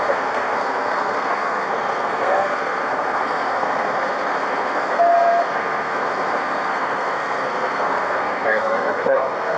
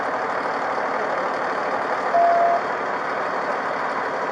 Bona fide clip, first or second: second